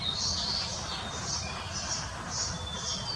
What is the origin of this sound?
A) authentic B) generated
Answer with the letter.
A